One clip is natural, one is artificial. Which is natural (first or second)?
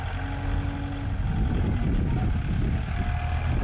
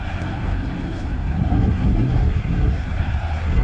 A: first